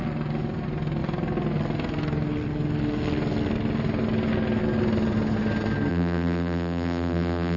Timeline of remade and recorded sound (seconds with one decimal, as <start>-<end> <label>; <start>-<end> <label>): 0.0-5.9 recorded; 5.9-7.6 remade